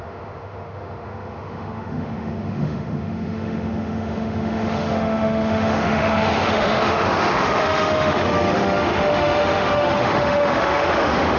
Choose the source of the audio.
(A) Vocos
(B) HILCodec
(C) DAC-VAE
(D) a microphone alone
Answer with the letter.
C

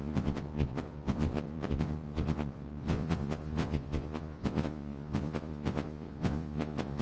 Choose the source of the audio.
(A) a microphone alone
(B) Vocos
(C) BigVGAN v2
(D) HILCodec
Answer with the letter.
B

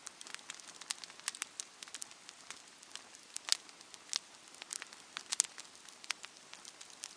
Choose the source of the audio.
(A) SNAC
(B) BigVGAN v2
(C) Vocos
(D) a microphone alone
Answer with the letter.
D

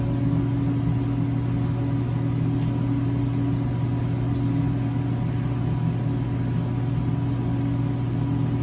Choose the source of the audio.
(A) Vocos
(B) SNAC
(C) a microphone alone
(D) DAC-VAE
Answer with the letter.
C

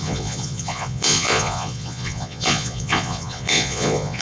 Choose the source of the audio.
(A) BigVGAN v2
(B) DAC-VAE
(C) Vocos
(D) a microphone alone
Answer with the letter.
C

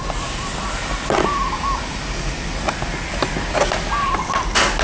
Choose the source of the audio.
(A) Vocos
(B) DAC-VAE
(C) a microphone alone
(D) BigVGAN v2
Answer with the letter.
C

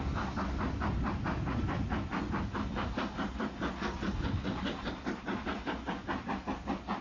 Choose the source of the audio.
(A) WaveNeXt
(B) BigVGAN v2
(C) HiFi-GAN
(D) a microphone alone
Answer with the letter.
D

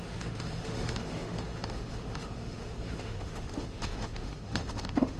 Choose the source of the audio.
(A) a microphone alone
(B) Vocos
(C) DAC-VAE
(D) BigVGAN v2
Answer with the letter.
C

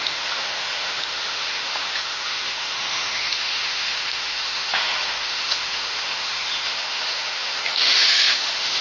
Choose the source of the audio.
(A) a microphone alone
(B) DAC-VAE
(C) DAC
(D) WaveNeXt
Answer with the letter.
B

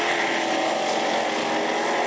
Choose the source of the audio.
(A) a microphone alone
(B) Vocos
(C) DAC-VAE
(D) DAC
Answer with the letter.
A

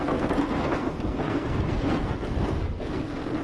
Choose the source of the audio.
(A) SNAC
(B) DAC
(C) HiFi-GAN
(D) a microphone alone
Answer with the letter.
A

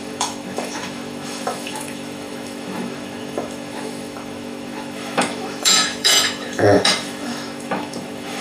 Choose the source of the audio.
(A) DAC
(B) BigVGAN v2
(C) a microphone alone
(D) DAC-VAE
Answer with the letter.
D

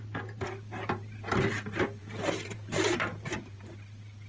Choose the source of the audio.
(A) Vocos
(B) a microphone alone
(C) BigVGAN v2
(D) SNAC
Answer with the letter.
C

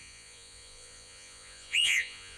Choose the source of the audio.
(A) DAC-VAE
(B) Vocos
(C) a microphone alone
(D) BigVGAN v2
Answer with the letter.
B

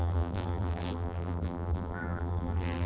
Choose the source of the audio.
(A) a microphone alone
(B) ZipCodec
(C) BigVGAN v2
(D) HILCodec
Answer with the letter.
C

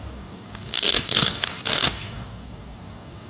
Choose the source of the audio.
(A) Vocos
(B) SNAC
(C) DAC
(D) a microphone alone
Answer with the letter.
C